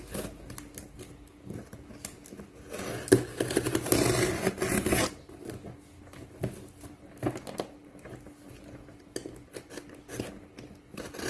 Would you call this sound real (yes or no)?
yes